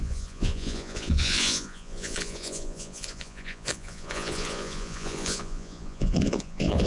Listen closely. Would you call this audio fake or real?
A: fake